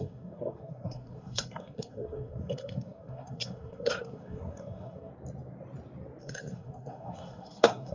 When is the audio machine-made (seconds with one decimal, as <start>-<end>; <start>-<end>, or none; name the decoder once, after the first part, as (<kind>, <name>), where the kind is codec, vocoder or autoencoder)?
0.0-5.1 (codec, SNAC); 6.2-7.9